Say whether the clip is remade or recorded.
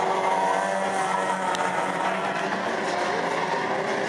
recorded